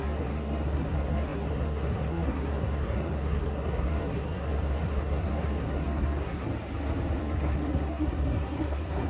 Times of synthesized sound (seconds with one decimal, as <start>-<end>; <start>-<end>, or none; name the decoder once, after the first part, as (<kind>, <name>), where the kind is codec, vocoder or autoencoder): 0.0-6.5 (codec, SNAC); 7.2-9.1